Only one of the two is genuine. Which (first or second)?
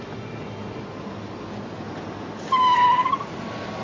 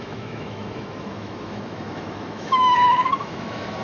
first